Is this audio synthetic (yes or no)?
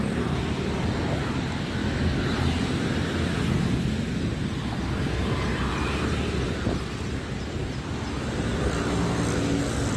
no